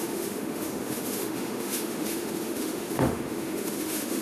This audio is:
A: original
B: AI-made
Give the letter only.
B